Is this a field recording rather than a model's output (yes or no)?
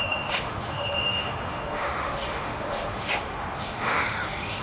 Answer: no